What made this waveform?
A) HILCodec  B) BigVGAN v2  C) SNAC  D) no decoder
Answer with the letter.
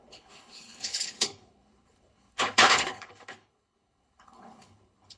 A